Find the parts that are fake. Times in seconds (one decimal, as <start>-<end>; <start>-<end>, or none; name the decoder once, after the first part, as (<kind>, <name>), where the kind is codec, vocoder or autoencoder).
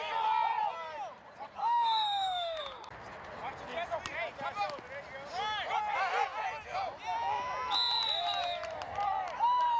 1.6-2.6 (autoencoder, DAC-VAE)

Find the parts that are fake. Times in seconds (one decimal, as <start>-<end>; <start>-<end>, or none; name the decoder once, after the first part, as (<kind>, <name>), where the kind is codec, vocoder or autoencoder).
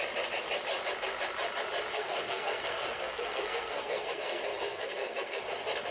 1.9-5.4 (codec, SNAC)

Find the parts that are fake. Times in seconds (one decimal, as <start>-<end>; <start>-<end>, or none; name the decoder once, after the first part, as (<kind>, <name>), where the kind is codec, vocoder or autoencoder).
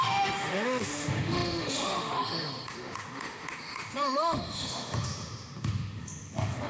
0.0-6.7 (autoencoder, DAC-VAE)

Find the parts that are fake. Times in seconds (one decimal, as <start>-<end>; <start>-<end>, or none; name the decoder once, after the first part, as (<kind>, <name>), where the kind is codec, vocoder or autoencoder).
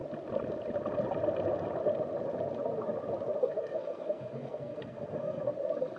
3.4-5.5 (codec, SNAC)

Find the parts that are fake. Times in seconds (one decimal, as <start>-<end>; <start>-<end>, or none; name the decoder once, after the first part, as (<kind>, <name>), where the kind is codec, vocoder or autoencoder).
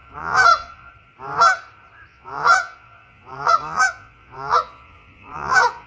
0.0-0.9 (vocoder, Vocos); 2.1-5.9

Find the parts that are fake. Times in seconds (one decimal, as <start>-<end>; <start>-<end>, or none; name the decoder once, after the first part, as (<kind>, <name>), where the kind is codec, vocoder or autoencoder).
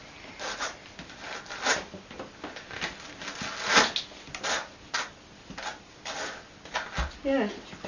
none